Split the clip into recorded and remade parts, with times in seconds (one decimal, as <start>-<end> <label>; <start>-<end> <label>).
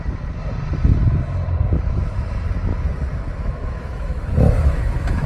0.0-2.7 recorded; 2.7-5.3 remade